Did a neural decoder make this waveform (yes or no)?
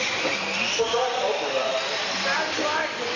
no